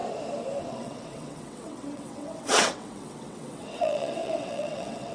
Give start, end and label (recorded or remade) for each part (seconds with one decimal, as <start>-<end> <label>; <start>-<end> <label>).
0.0-0.7 recorded; 0.7-5.1 remade